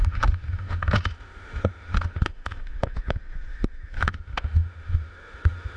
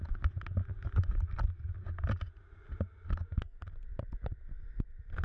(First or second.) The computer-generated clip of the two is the first